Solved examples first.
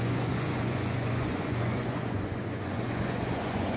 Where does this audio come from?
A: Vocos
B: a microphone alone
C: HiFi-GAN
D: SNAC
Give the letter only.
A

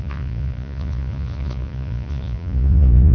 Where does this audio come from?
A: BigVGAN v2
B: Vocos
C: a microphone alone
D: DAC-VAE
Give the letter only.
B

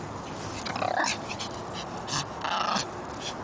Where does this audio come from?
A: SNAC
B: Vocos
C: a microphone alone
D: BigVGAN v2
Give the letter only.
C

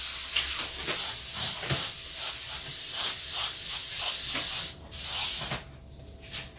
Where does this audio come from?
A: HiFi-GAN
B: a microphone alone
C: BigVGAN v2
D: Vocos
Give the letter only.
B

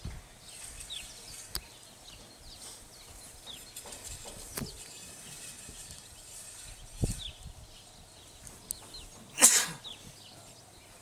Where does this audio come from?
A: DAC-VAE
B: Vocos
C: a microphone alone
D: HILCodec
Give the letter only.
C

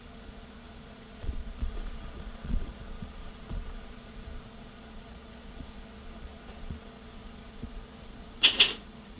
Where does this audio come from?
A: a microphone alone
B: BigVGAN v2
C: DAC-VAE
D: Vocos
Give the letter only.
D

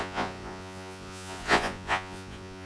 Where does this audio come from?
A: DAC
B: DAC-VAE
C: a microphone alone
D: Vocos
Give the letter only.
D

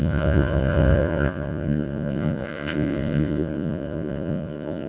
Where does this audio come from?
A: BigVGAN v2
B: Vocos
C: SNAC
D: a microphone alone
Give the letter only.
B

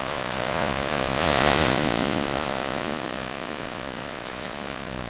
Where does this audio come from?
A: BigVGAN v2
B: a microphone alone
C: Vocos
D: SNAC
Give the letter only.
C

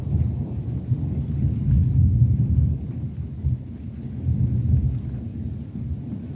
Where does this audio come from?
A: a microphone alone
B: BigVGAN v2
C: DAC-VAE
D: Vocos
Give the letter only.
A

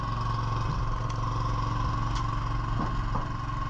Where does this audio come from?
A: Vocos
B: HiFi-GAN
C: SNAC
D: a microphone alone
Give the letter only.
D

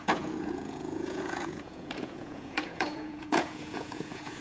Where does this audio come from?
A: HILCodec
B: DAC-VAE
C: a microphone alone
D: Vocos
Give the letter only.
D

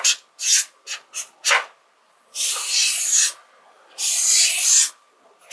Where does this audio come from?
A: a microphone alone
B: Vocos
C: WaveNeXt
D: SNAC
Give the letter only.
A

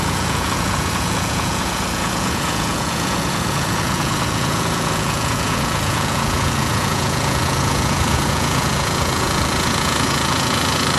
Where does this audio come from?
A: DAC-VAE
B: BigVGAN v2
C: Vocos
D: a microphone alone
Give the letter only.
C